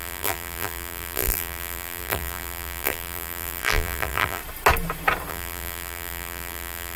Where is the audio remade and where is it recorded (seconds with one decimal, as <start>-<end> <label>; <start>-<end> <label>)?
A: 0.0-4.4 remade; 4.4-5.3 recorded; 5.3-7.0 remade

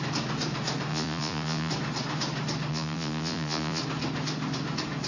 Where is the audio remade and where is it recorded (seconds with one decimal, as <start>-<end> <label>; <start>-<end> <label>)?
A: 0.0-0.9 recorded; 0.9-1.7 remade; 1.7-2.7 recorded; 2.7-3.8 remade; 3.8-5.1 recorded